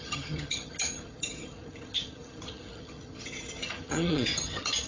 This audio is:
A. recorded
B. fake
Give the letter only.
B